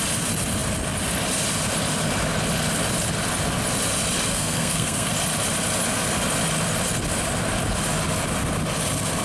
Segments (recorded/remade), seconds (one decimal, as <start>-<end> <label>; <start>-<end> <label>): 0.0-4.3 recorded; 4.3-5.1 remade; 5.1-9.2 recorded